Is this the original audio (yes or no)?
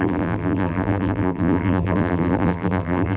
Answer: no